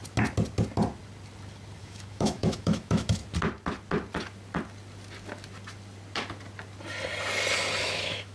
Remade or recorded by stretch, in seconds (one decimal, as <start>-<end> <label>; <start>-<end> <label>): 0.0-1.8 recorded; 1.8-3.2 remade; 3.2-7.8 recorded; 7.8-8.3 remade